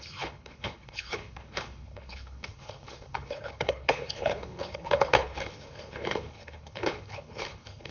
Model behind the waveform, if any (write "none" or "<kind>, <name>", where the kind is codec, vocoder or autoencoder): codec, HILCodec